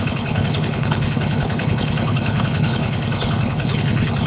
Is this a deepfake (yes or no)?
yes